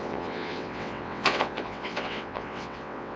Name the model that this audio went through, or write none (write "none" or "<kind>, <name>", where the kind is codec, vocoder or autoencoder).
vocoder, WaveNeXt